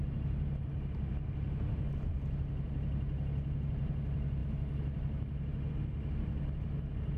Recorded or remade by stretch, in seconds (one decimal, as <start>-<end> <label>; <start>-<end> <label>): 0.0-7.2 recorded